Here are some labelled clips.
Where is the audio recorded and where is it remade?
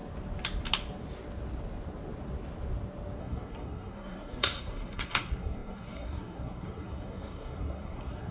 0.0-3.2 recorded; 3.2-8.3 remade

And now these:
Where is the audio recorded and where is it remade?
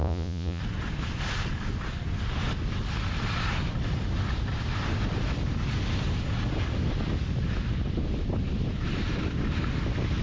0.0-0.6 remade; 0.6-10.2 recorded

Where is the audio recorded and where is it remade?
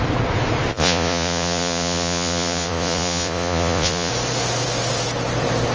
0.0-0.7 recorded; 0.7-4.1 remade; 4.1-5.7 recorded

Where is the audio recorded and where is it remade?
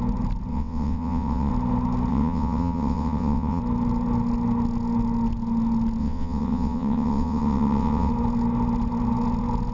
0.0-0.5 recorded; 0.5-1.5 remade; 1.5-2.1 recorded; 2.1-3.6 remade; 3.6-6.0 recorded; 6.0-8.1 remade; 8.1-9.7 recorded